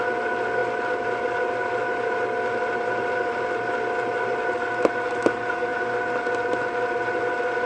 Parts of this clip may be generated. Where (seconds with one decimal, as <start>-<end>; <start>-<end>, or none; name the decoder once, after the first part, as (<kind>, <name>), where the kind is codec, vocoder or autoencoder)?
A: none